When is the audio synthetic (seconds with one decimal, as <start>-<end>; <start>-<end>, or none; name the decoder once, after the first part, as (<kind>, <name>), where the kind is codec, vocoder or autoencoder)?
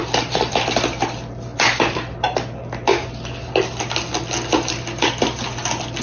none